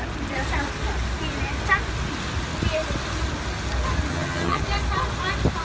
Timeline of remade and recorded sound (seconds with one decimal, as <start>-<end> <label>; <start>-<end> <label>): 0.0-4.1 recorded; 4.1-4.6 remade; 4.6-5.6 recorded